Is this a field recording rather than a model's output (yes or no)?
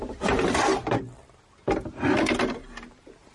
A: yes